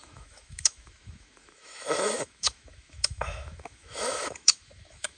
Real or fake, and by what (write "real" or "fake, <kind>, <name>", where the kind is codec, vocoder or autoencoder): fake, autoencoder, DAC-VAE